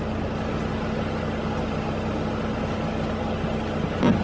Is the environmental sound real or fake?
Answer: real